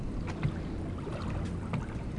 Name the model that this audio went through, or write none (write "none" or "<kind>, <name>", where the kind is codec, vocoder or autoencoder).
none